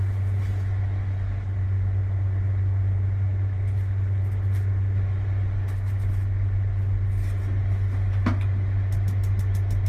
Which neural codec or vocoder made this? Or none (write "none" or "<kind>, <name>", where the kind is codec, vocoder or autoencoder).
none